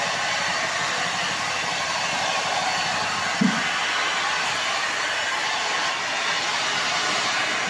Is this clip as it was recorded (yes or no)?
yes